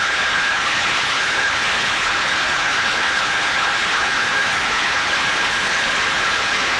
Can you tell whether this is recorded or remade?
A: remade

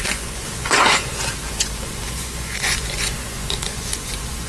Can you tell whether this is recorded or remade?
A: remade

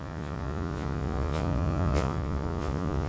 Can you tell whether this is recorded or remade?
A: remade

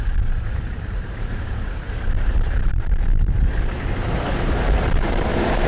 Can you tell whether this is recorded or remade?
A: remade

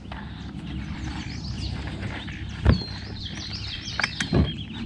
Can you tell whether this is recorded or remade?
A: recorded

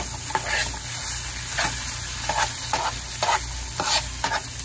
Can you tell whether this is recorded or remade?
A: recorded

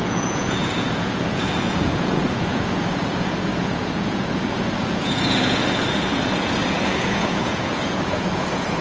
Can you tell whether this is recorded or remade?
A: remade